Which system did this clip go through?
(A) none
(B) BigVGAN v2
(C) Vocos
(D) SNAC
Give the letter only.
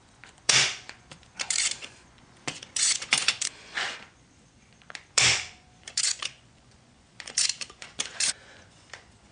C